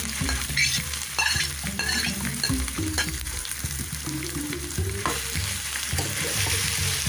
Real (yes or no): no